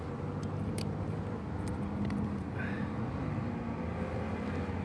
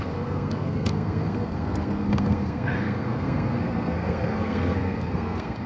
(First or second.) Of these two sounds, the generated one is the second